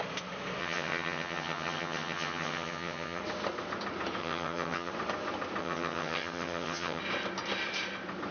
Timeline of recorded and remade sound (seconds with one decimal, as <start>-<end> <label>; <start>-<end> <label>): 0.0-0.6 recorded; 0.6-3.2 remade; 3.2-4.2 recorded; 4.2-4.9 remade; 4.9-5.6 recorded; 5.6-7.0 remade; 7.0-8.3 recorded